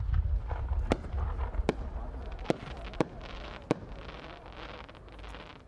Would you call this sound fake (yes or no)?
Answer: no